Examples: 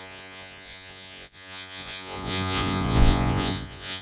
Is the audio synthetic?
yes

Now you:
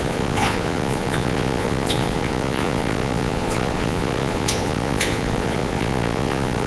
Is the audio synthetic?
yes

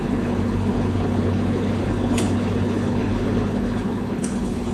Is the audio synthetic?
yes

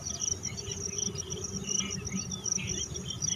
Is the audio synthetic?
yes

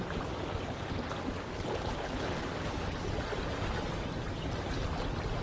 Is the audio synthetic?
no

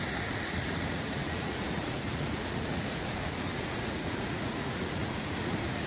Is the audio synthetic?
yes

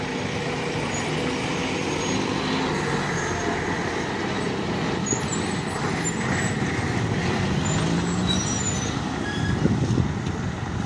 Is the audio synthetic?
no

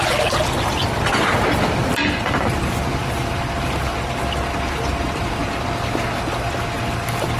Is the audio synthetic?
no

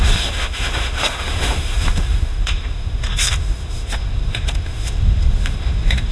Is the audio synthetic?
yes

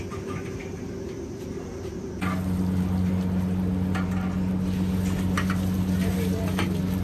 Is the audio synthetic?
no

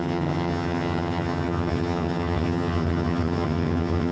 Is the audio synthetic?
yes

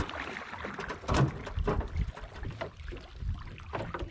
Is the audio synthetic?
no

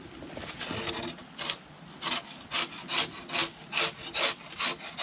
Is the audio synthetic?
no